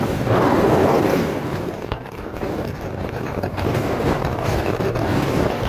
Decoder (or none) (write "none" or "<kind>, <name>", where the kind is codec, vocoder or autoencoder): codec, DAC